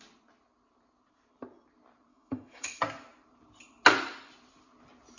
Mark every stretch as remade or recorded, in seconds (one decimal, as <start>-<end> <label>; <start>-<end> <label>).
0.0-2.1 recorded; 2.1-2.8 remade; 2.8-5.2 recorded